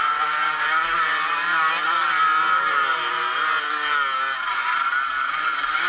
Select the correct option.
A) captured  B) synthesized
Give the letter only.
A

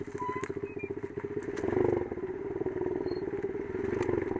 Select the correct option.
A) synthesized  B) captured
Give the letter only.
B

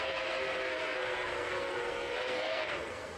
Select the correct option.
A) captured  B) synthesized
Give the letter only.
B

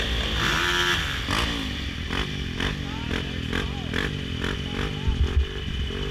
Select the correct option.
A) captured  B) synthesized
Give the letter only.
A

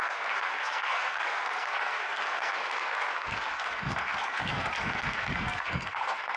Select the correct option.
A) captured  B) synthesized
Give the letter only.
B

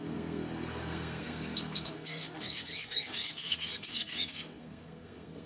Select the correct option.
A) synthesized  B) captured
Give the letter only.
A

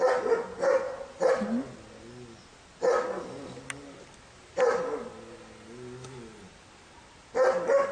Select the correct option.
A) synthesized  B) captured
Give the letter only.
B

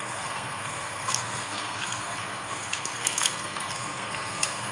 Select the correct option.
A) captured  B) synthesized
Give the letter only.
B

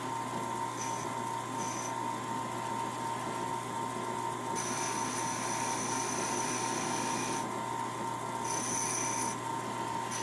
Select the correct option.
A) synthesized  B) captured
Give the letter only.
B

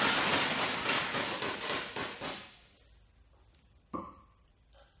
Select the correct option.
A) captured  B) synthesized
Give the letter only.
A